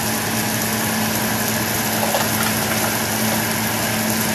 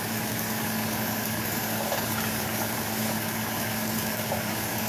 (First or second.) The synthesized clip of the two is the second